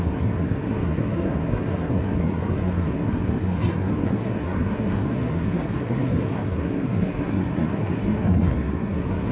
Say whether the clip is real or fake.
fake